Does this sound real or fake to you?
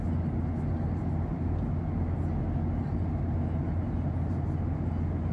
real